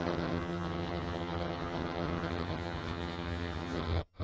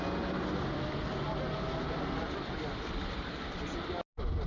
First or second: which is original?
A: second